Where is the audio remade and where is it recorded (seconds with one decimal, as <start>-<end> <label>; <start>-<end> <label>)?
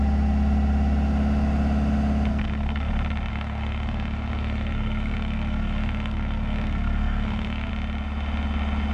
0.0-2.3 recorded; 2.3-2.9 remade; 2.9-3.3 recorded; 3.3-7.7 remade; 7.7-8.9 recorded